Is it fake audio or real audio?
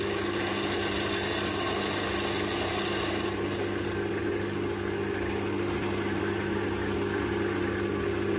real